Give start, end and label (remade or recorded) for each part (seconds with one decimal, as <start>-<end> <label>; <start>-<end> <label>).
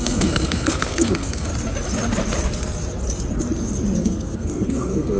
0.0-1.5 remade; 1.5-4.0 recorded; 4.0-5.2 remade